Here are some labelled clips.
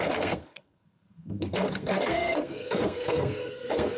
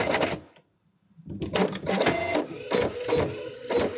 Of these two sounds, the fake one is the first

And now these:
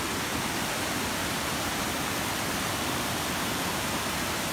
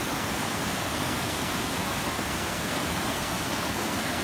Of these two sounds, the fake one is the second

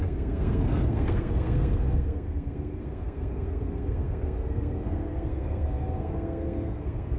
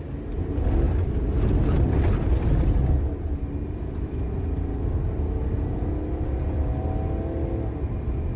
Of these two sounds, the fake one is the first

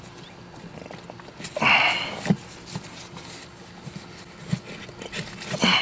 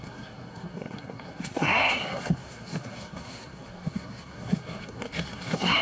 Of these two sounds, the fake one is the second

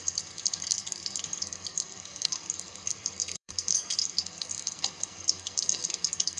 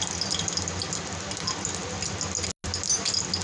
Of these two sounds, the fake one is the first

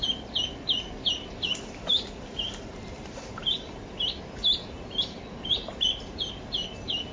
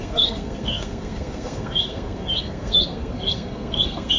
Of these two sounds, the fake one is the second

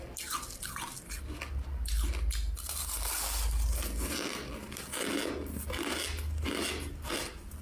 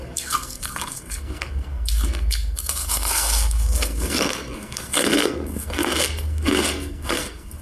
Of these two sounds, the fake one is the second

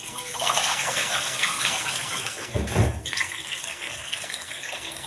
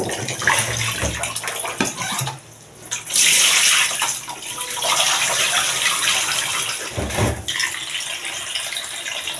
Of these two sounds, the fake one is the first